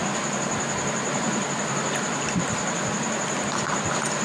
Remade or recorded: recorded